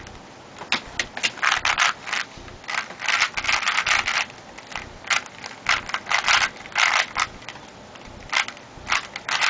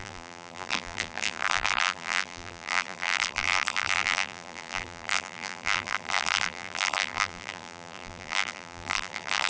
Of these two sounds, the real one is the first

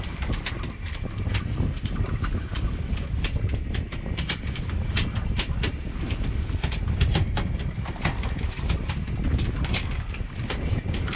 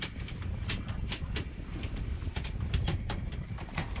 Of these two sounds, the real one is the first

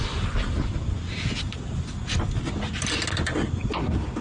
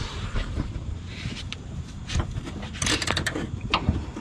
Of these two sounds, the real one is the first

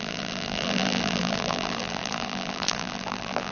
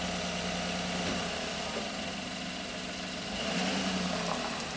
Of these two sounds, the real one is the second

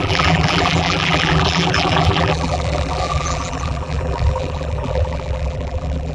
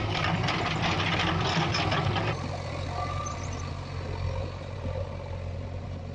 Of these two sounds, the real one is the second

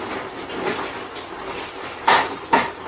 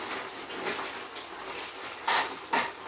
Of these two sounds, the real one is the second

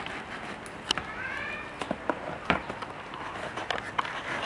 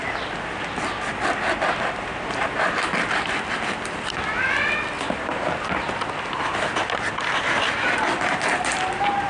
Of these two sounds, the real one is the second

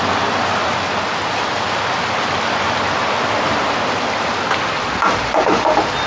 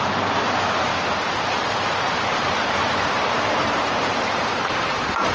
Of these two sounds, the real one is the first